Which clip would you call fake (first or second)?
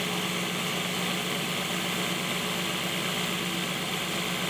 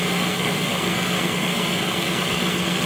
second